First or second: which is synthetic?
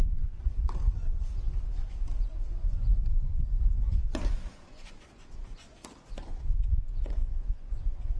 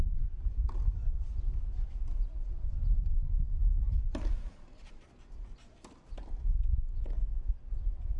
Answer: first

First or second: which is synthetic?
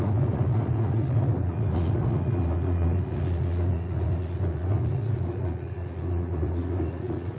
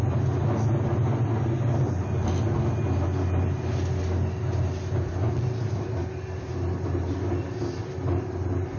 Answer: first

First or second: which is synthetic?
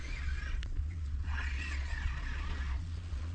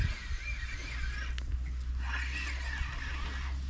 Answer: first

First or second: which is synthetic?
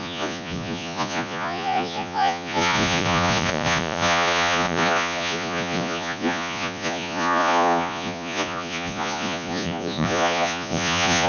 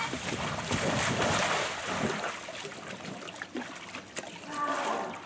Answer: first